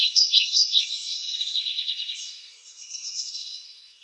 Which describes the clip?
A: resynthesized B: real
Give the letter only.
A